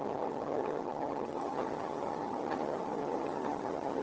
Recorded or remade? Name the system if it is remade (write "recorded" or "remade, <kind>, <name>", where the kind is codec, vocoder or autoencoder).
remade, vocoder, HiFi-GAN